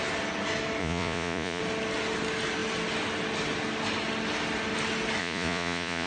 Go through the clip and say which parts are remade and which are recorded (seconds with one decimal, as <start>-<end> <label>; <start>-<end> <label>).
0.0-0.8 recorded; 0.8-1.6 remade; 1.6-5.2 recorded; 5.2-6.1 remade